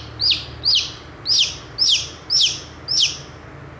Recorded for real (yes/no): yes